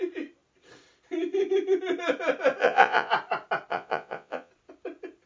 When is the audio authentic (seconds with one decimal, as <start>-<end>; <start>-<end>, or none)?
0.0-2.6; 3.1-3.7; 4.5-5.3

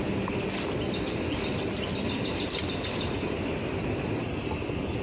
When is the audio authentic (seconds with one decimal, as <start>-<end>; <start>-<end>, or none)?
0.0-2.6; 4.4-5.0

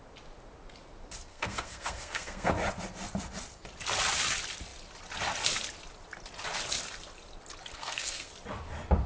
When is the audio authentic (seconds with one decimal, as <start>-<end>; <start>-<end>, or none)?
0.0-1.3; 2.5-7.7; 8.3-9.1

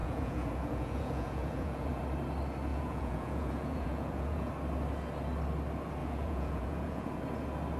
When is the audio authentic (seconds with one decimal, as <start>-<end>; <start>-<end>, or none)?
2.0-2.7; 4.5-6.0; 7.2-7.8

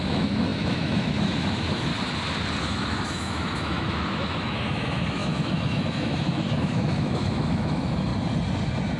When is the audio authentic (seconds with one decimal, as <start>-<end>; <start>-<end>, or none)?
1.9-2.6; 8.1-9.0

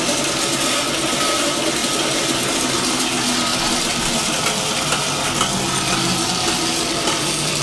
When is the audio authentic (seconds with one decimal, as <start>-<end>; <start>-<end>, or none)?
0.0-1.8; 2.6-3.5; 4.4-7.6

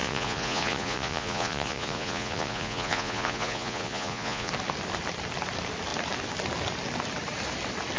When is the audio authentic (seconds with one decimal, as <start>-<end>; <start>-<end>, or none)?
4.5-8.0

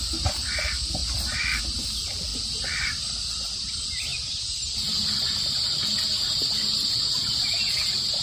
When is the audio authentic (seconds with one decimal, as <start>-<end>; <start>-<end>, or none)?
0.0-8.2